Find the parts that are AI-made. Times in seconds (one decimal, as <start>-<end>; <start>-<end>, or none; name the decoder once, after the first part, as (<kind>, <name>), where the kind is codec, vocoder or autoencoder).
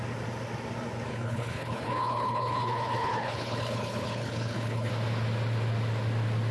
1.1-4.9 (codec, HILCodec)